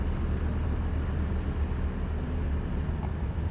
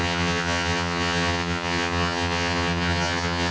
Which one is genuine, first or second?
first